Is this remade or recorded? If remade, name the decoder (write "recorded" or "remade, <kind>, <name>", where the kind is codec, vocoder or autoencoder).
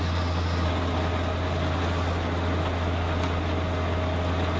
recorded